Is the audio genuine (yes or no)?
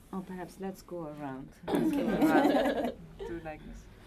yes